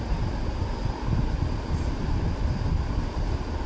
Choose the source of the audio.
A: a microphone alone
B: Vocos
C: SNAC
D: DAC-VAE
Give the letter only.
A